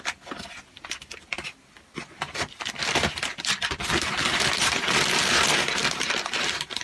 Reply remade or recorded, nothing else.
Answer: recorded